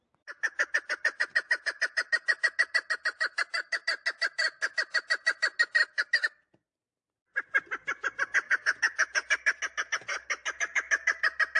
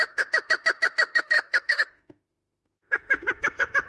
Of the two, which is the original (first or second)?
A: first